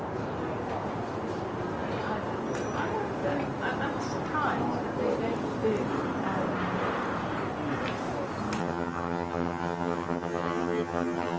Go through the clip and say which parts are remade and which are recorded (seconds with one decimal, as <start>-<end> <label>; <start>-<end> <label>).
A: 0.0-8.6 recorded; 8.6-11.4 remade